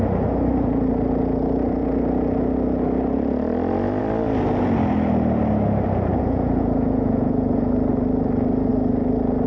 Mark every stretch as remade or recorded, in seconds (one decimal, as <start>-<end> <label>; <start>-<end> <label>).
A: 0.0-6.1 recorded; 6.1-7.7 remade; 7.7-9.5 recorded